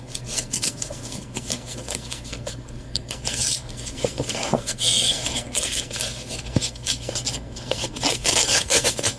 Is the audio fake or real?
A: fake